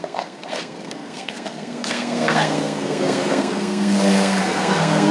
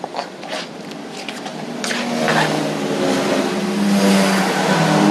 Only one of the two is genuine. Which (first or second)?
second